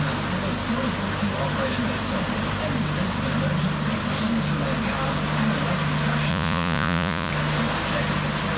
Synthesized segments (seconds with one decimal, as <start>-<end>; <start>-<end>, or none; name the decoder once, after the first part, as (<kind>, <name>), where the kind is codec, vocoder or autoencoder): 6.3-7.3 (vocoder, Vocos)